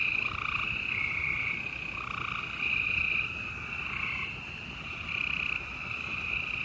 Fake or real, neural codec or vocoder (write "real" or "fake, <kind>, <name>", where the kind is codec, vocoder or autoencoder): real